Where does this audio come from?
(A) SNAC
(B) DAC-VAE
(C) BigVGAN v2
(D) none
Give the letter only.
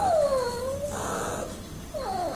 D